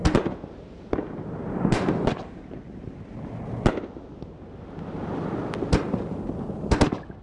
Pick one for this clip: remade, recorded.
recorded